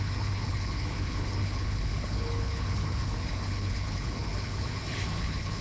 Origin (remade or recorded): remade